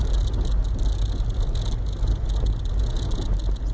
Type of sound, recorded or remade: recorded